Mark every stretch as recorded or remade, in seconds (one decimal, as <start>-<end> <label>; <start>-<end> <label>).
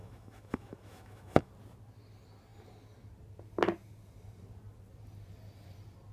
0.0-1.5 remade; 1.5-6.1 recorded